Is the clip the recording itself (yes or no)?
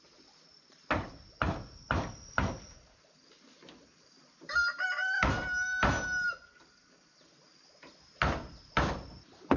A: yes